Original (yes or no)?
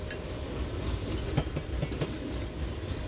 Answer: yes